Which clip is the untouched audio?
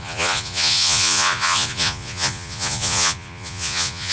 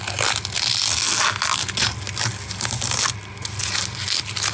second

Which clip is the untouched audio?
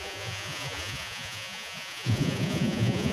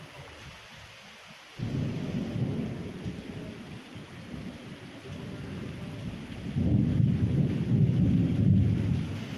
second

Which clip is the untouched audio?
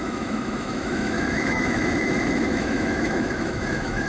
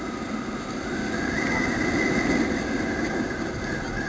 second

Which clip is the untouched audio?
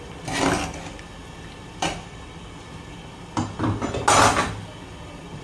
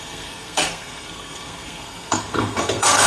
first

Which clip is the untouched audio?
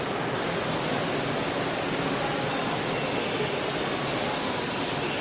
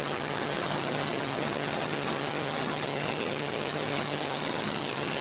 first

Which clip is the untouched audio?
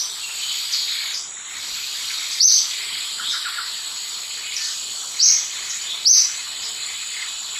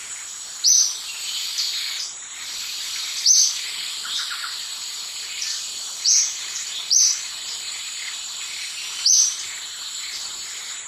first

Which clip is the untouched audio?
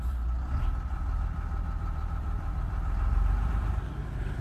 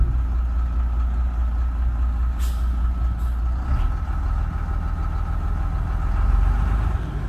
second